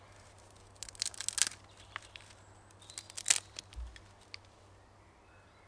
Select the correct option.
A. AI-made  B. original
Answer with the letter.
B